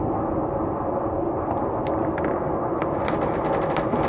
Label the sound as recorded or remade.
remade